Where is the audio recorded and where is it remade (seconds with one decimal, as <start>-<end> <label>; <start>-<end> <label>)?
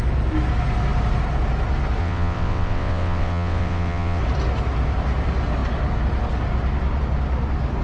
0.0-2.0 recorded; 2.0-4.2 remade; 4.2-7.8 recorded